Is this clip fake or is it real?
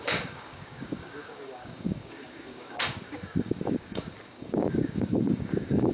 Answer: fake